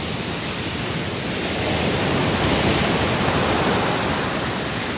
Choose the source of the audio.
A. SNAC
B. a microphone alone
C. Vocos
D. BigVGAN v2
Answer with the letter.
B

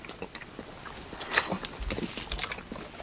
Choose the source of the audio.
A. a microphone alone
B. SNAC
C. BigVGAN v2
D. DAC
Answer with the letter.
A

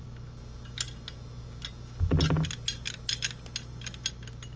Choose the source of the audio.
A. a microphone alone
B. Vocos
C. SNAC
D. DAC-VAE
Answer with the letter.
A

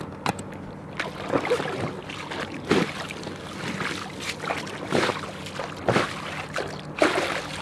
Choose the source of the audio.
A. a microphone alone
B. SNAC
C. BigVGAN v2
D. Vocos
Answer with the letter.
A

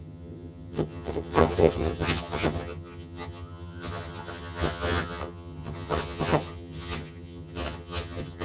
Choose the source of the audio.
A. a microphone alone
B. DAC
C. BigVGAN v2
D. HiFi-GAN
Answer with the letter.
D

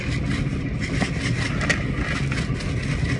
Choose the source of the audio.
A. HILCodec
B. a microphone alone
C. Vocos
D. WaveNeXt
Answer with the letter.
B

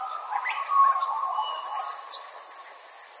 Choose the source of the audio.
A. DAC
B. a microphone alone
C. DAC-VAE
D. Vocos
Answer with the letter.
B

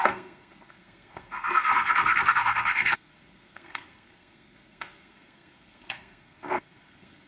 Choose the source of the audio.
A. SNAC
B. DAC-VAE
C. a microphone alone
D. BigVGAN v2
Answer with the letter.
A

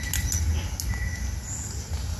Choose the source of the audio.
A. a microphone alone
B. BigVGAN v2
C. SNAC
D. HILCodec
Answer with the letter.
A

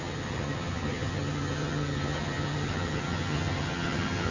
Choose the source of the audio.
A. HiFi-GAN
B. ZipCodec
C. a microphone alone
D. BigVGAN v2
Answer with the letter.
A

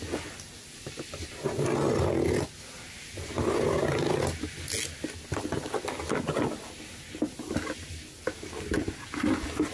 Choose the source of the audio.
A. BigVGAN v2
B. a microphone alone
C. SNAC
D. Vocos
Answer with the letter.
B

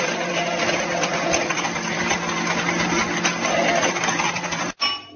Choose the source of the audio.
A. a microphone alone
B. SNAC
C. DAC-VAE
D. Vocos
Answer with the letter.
A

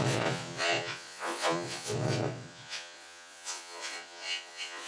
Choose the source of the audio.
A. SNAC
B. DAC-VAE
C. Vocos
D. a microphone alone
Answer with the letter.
C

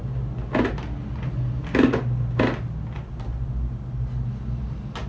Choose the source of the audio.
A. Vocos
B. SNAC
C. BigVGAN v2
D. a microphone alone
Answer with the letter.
D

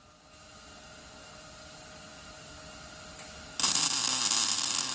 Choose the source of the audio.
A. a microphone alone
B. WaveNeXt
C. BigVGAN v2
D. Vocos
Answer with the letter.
A